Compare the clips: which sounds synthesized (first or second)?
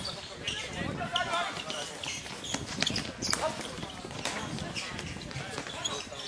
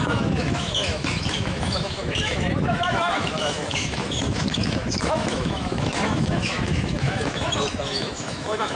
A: second